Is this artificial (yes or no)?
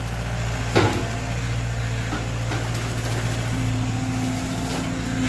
no